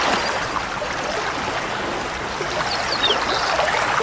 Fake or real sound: real